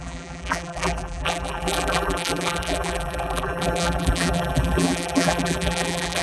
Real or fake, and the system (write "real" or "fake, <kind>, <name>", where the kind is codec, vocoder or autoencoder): fake, vocoder, BigVGAN v2